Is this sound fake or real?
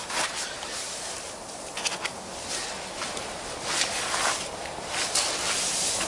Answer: real